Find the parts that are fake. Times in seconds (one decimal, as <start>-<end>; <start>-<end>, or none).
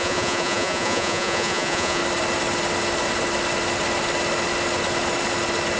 0.0-2.0